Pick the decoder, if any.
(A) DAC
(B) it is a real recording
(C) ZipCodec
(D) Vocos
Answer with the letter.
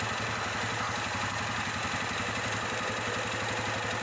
B